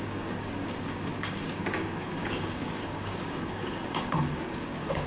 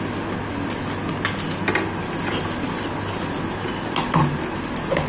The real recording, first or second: second